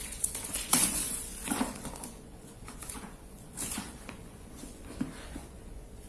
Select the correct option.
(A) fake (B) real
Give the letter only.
A